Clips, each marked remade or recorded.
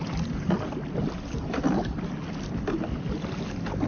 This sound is recorded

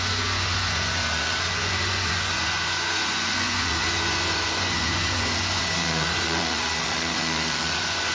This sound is remade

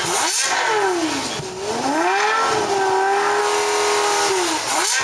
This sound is recorded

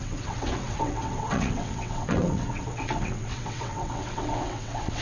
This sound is remade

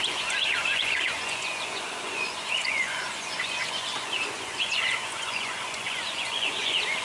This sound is remade